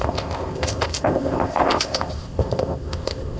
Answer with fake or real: fake